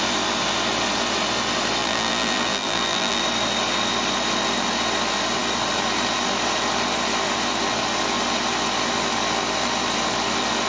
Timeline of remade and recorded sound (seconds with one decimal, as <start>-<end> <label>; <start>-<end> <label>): 0.0-1.8 recorded; 1.8-3.2 remade; 3.2-10.7 recorded